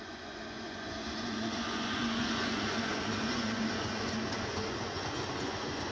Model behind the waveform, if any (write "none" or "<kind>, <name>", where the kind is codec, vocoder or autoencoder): vocoder, Vocos